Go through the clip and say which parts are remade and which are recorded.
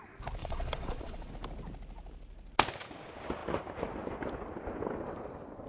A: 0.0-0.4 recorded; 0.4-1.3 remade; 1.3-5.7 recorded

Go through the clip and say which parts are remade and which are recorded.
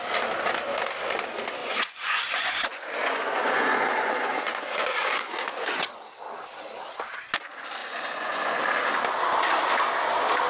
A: 0.0-1.6 recorded; 1.6-5.8 remade; 5.8-7.8 recorded; 7.8-8.6 remade; 8.6-10.5 recorded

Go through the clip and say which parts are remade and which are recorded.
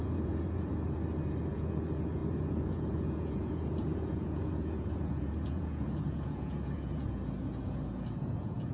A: 0.0-0.7 remade; 0.7-1.5 recorded; 1.5-8.7 remade